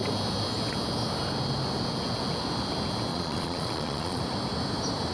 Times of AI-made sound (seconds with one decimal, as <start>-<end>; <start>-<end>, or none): 3.1-4.2